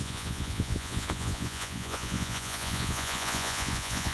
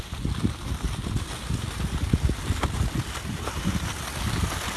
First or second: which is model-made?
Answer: first